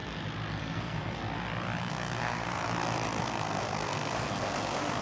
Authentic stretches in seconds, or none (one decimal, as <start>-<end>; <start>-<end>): 0.0-0.6; 1.2-1.8; 2.6-3.2